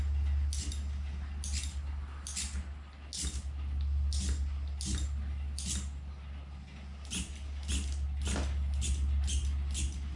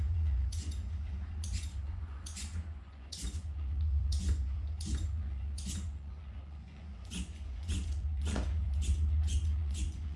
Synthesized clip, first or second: second